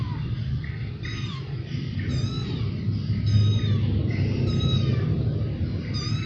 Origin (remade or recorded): recorded